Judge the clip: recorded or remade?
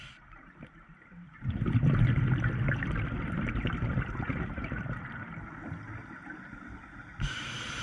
recorded